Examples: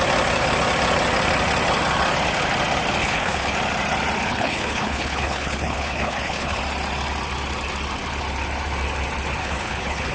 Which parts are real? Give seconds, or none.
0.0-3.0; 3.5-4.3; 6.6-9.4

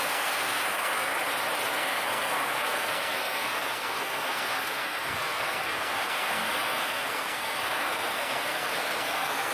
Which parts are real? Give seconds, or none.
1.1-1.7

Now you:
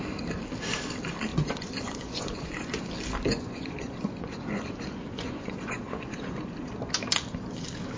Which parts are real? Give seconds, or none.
0.0-1.3; 2.8-3.3; 6.7-8.0

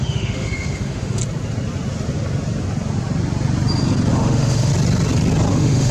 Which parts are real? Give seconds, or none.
1.2-4.1; 4.7-5.5

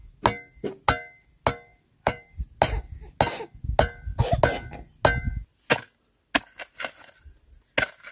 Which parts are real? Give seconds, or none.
0.0-1.7; 2.4-8.1

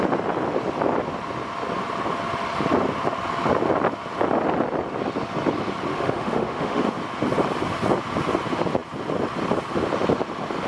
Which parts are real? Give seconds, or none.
0.0-5.9; 7.0-10.7

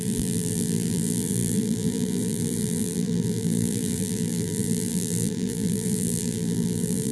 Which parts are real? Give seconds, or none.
none

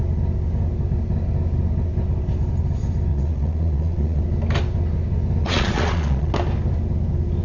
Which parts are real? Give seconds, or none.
0.0-3.1; 4.2-5.4; 6.3-7.4